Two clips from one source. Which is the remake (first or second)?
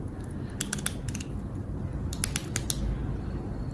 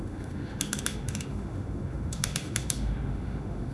second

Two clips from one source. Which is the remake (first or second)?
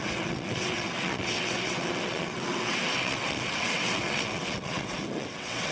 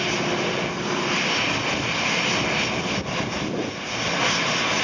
first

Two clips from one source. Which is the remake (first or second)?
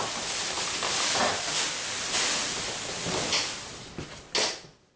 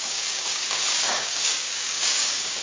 second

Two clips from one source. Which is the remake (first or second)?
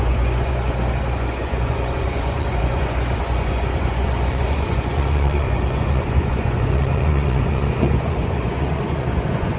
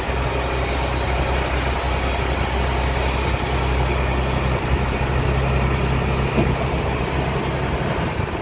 first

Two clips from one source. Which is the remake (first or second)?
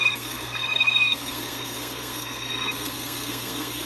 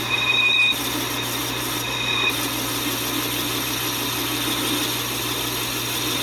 first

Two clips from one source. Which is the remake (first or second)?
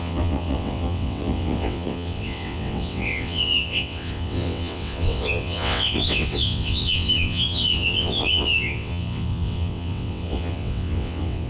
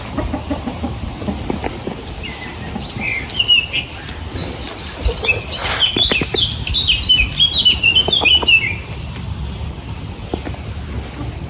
first